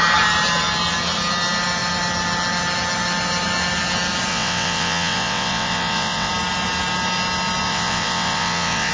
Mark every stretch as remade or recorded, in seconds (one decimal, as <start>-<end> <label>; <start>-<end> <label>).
0.0-4.3 recorded; 4.3-6.3 remade; 6.3-7.7 recorded; 7.7-8.9 remade